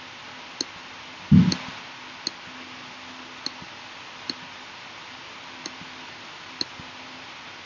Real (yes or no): yes